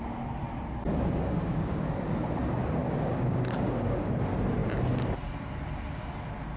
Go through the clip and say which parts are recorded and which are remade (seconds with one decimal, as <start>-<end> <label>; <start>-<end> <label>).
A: 0.0-0.9 recorded; 0.9-1.8 remade; 1.8-2.8 recorded; 2.8-4.1 remade; 4.1-6.6 recorded